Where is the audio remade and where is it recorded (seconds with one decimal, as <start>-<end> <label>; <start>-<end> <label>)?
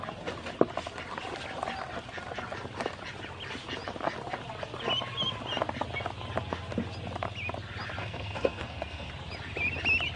0.0-8.0 recorded; 8.0-9.1 remade; 9.1-10.2 recorded